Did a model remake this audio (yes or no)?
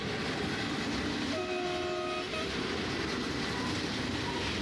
no